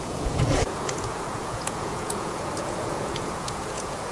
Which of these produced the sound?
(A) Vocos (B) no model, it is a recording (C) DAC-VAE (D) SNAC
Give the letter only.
A